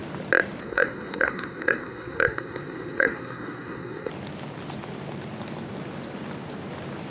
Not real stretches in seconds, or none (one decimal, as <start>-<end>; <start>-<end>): 0.6-4.1